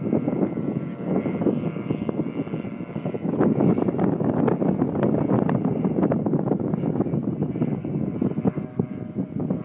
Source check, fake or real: real